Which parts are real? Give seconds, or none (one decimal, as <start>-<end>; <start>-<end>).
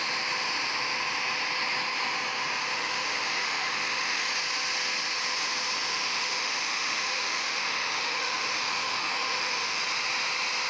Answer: 0.0-2.6; 4.3-5.9; 9.8-10.7